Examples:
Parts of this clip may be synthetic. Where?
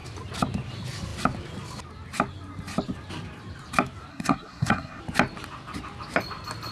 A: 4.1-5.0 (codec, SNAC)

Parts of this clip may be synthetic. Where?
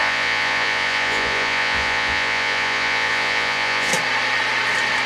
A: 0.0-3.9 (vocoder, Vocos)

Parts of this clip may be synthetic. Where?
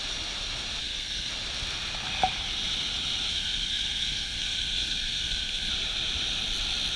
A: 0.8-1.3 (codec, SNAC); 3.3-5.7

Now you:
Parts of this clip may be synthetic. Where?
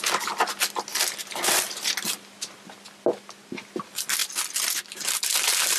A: none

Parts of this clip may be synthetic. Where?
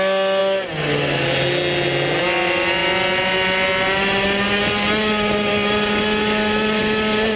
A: none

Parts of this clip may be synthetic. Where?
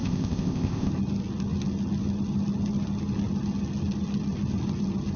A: 0.0-0.9 (codec, ZipCodec)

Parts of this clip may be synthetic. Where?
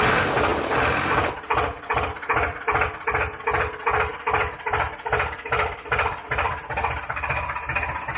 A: 0.5-2.6 (vocoder, BigVGAN v2); 4.1-6.6